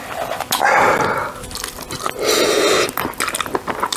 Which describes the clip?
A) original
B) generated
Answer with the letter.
A